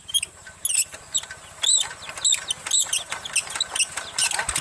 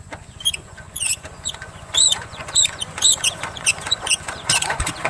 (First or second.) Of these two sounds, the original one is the first